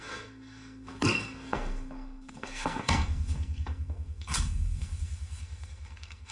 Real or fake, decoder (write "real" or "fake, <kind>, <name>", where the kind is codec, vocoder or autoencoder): fake, codec, SNAC